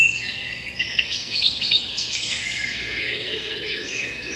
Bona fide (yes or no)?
no